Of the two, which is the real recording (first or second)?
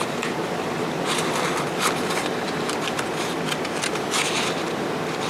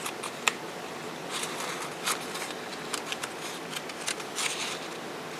second